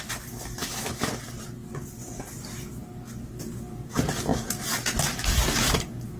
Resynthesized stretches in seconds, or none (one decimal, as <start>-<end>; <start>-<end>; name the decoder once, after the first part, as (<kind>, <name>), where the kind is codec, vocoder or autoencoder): 0.6-1.1 (autoencoder, DAC-VAE)